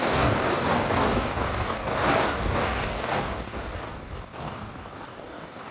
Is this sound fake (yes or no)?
yes